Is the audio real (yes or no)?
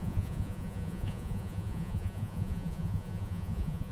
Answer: no